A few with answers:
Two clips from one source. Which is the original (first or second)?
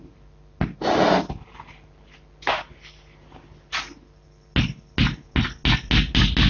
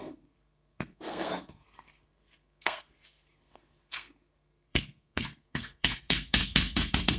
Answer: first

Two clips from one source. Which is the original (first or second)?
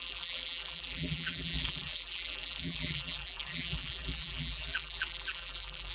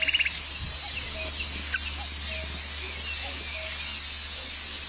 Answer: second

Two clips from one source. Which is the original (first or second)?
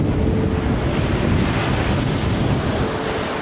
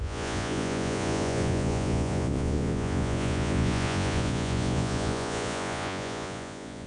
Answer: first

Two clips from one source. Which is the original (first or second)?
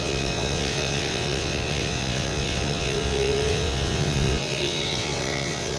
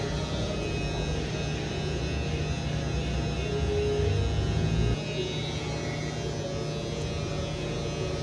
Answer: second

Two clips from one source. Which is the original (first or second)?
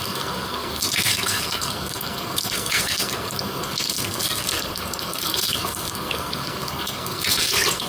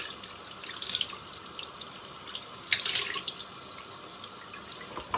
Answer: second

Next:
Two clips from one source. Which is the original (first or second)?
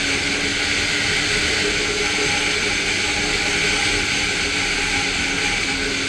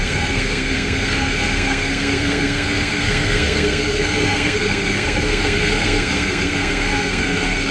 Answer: first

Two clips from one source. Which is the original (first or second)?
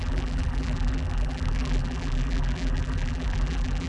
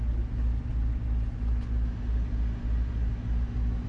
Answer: second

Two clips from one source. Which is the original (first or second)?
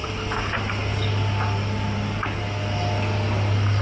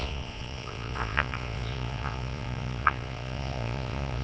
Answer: first